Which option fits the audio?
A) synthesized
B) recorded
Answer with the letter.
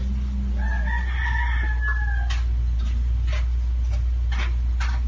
B